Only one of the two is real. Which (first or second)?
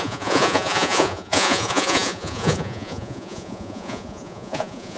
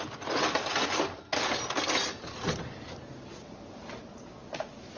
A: second